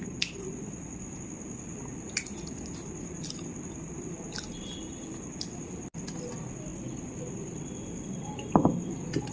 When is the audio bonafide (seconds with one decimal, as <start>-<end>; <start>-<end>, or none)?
0.0-9.3